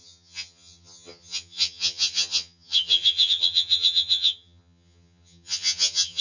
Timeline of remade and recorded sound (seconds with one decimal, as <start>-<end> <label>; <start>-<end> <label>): 0.0-6.2 remade